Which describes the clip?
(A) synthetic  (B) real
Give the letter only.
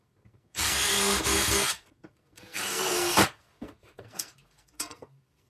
A